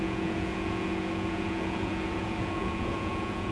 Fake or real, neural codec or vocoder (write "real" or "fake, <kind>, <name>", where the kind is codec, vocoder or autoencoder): fake, vocoder, Vocos